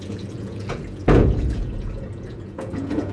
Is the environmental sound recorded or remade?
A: remade